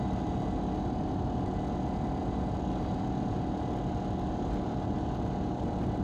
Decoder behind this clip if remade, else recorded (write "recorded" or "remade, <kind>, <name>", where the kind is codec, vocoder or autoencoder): recorded